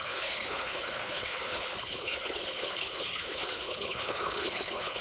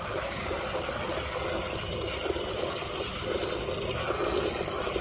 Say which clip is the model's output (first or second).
first